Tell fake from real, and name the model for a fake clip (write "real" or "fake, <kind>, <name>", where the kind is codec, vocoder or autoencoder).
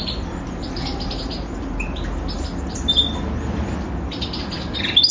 real